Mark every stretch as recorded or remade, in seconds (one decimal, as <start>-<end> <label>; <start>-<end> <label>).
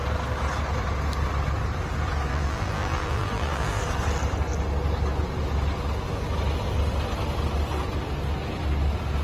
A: 0.0-2.3 recorded; 2.3-3.8 remade; 3.8-9.2 recorded